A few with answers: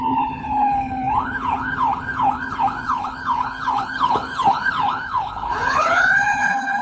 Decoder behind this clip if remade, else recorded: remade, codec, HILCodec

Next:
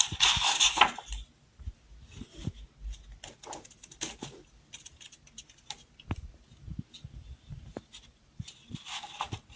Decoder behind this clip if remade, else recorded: recorded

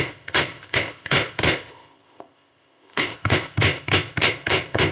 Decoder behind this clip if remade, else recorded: remade, codec, ZipCodec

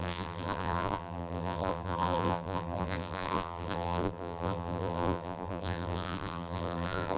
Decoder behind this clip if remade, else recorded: remade, vocoder, BigVGAN v2